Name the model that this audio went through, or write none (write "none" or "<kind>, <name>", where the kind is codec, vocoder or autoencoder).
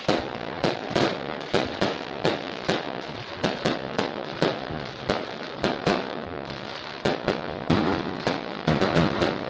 vocoder, Vocos